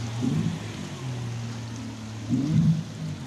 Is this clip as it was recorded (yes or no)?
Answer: yes